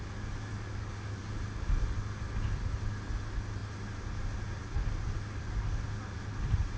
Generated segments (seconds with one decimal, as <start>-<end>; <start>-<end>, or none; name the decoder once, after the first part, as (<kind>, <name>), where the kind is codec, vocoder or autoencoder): 0.5-1.2 (codec, DAC)